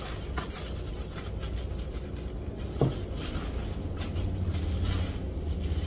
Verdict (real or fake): real